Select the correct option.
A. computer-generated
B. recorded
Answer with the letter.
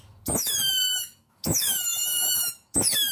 A